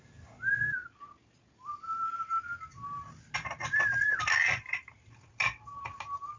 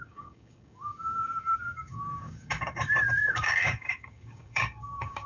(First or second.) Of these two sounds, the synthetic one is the second